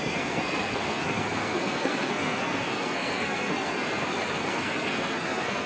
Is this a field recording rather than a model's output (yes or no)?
no